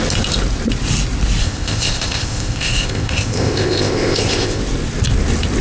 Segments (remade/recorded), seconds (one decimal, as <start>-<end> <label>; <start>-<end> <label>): 0.0-1.4 recorded; 1.4-4.6 remade; 4.6-5.6 recorded